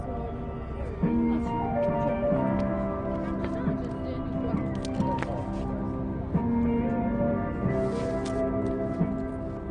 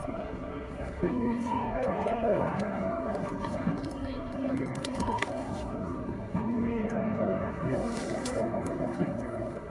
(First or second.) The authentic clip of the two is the first